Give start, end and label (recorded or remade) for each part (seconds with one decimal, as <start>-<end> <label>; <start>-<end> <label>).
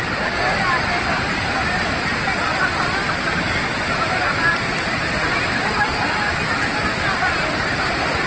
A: 0.0-8.3 recorded